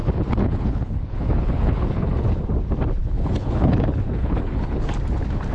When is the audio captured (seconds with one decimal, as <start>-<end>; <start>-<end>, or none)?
2.4-3.0; 4.9-5.5